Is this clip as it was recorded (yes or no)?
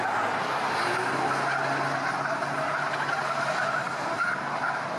yes